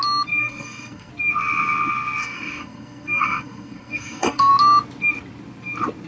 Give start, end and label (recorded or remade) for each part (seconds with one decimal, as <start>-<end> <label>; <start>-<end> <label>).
0.0-0.4 recorded; 0.4-1.1 remade; 1.1-2.2 recorded; 2.2-4.5 remade; 4.5-6.1 recorded